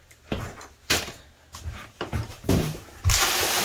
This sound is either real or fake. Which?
fake